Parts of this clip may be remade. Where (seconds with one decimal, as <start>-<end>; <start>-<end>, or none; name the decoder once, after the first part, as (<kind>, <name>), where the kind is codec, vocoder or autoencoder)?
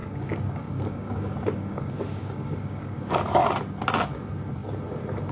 0.0-3.2 (codec, DAC)